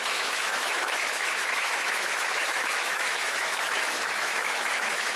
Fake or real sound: fake